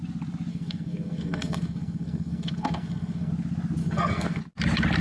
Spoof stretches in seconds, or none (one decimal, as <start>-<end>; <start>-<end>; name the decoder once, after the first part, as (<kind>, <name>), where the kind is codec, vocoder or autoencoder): 0.5-3.3 (codec, SNAC); 3.8-4.4